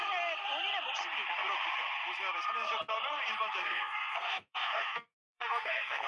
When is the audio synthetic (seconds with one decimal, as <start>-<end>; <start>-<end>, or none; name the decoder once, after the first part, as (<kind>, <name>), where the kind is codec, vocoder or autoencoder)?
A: 3.6-6.1 (codec, SNAC)